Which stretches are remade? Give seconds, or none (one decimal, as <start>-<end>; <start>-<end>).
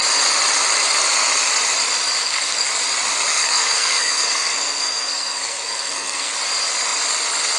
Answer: 2.2-2.7; 3.3-6.3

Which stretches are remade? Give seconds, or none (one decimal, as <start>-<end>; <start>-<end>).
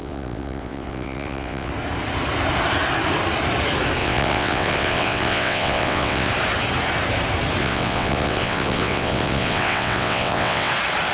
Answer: 0.0-1.7; 4.0-6.3; 7.6-10.7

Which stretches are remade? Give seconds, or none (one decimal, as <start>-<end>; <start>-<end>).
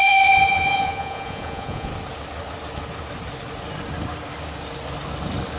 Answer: 0.0-1.9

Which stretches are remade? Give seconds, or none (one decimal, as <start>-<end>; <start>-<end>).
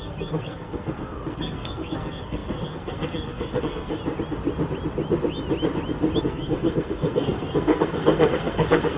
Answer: 0.0-4.0; 6.2-9.0